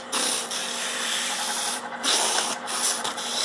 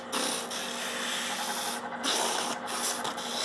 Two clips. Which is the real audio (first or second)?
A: second